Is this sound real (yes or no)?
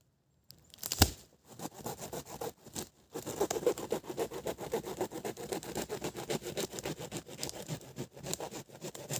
yes